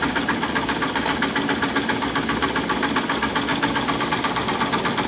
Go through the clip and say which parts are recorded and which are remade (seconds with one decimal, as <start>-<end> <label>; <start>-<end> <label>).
0.0-5.1 recorded